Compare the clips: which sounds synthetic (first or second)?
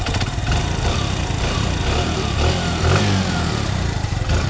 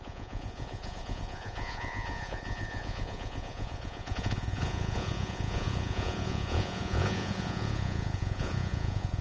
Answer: second